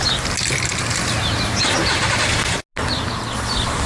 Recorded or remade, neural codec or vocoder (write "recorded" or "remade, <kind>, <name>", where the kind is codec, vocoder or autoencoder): recorded